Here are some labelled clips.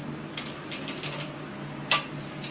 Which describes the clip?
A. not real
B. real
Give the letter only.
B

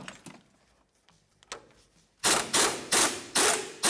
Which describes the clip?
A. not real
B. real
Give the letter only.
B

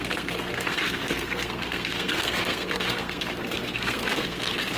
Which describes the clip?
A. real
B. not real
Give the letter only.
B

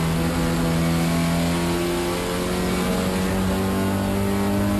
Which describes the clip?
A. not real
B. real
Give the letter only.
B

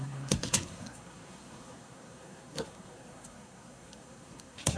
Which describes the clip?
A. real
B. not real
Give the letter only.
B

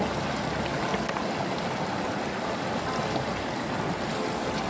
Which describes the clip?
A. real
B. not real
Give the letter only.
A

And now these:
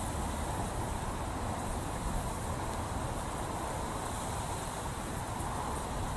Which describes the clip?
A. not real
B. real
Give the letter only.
B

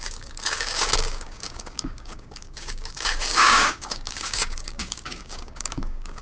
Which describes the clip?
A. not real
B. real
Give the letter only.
A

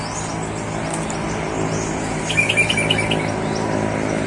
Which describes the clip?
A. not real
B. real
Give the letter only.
B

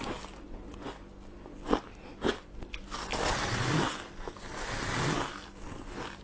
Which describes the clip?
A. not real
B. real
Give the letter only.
B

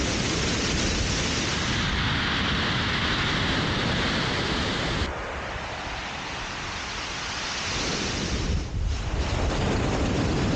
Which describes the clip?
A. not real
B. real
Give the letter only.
B